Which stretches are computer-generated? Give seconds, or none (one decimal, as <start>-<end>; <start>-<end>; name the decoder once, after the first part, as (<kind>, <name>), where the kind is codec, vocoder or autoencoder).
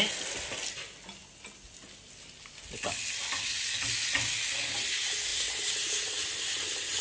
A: none